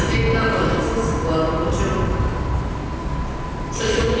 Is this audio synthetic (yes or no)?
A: no